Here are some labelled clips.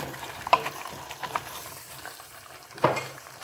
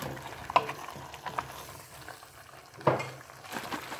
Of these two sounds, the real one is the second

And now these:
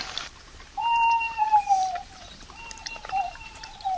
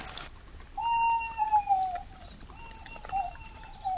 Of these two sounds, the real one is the second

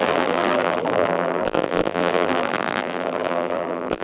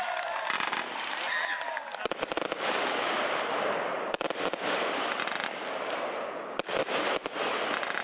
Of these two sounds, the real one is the second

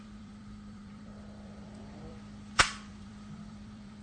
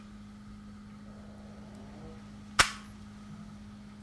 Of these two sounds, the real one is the second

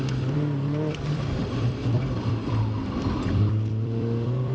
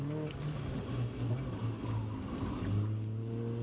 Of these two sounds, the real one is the second